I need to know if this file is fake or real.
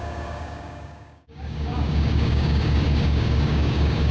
fake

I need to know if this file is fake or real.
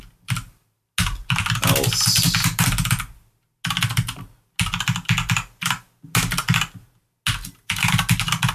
real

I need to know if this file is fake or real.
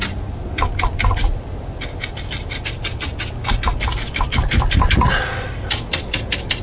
real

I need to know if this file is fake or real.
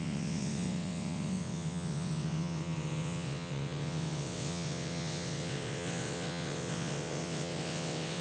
fake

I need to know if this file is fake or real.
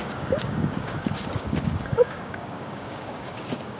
fake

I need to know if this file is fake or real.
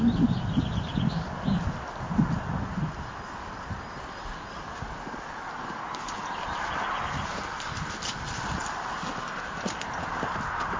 real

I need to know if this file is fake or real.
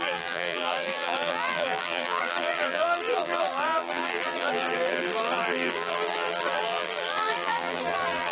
fake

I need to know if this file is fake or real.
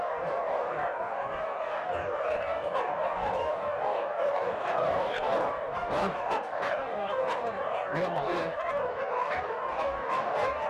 fake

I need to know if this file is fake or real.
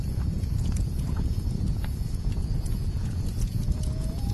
fake